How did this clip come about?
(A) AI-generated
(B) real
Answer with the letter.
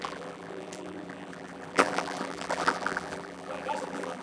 A